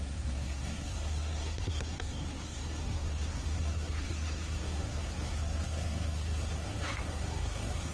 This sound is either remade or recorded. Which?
remade